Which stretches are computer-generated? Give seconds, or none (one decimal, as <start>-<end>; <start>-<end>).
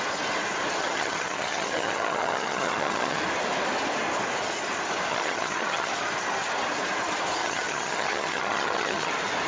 0.8-3.2; 5.1-5.9; 7.4-9.1